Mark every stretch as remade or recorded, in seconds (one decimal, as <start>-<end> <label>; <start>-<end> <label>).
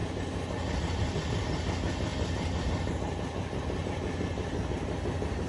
0.0-2.1 recorded; 2.1-2.9 remade; 2.9-5.5 recorded